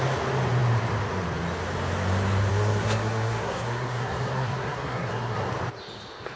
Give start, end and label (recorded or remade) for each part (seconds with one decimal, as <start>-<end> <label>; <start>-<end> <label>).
0.0-2.5 recorded; 2.5-5.5 remade; 5.5-6.4 recorded